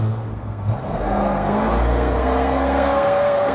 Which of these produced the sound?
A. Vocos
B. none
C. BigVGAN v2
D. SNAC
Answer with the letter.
D